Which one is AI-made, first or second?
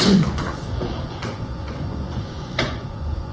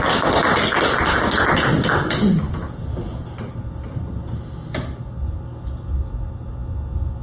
first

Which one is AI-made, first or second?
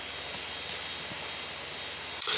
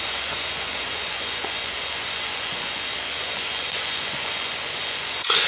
second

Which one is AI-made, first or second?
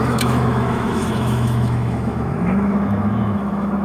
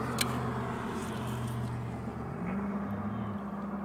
first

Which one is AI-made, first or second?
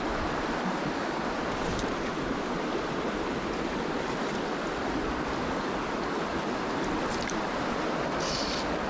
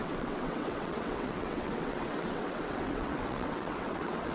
second